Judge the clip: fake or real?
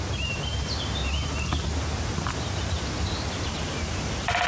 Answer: real